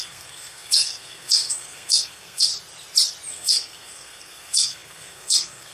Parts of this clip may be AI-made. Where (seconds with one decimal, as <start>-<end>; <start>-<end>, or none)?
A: 0.0-2.5; 3.3-5.7